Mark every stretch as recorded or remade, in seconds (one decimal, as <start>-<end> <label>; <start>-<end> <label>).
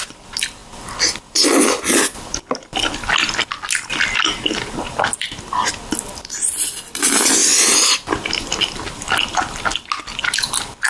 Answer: 0.0-10.9 recorded